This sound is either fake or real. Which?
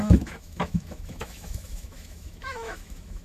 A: fake